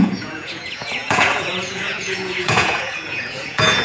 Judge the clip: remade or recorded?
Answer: remade